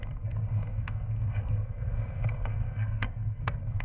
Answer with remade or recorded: remade